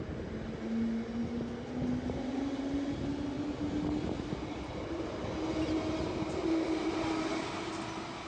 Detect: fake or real real